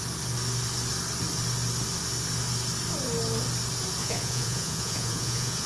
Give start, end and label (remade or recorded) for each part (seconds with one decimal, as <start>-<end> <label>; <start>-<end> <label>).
0.0-4.0 recorded; 4.0-5.7 remade